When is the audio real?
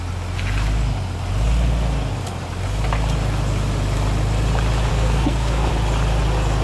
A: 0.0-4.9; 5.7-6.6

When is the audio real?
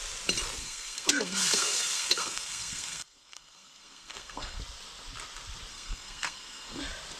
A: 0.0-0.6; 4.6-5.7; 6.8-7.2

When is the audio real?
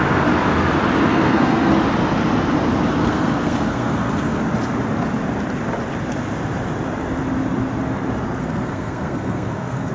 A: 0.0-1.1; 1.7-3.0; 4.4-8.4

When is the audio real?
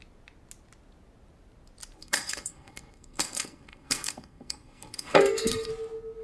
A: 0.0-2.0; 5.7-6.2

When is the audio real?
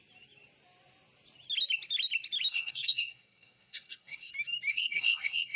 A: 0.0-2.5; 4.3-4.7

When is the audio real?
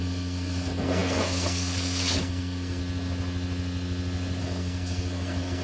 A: 2.8-4.4